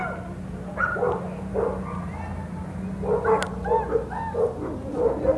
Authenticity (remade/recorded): recorded